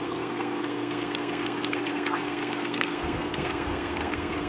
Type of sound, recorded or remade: remade